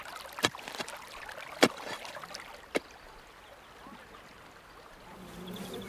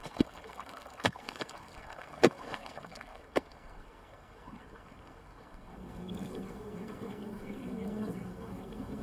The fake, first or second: second